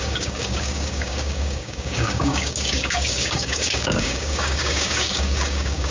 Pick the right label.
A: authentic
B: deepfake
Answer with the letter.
B